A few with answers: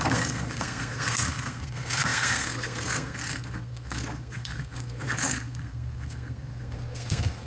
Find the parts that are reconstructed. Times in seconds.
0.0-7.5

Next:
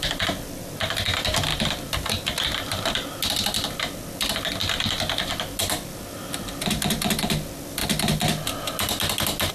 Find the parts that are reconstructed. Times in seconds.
none

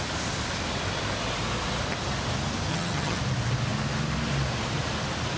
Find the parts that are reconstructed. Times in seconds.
2.7-3.2

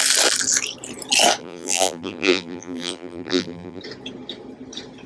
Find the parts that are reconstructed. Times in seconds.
1.4-3.8

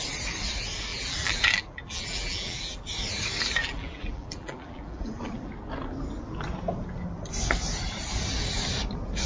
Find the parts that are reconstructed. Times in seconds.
0.9-2.8; 3.6-5.5

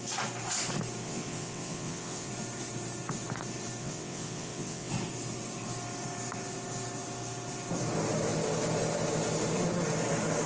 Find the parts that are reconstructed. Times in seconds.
1.0-2.3; 3.8-4.9